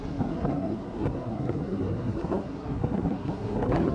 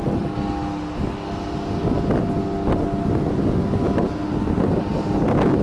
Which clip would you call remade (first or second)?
first